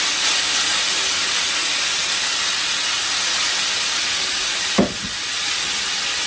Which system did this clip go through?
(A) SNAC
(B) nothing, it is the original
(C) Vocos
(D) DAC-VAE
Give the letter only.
B